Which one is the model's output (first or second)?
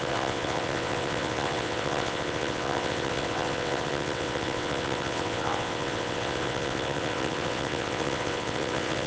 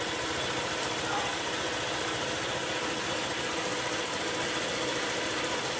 first